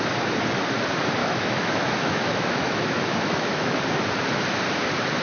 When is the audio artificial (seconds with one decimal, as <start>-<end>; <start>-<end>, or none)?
1.2-3.8